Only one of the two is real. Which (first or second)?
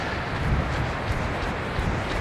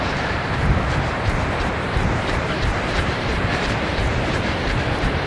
first